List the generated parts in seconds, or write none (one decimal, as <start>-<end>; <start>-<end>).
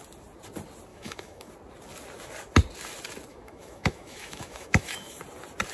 0.9-1.5; 3.3-5.2